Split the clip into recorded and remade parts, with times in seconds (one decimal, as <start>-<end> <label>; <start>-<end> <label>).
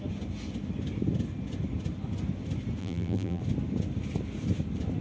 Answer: 0.0-2.8 recorded; 2.8-3.4 remade; 3.4-5.0 recorded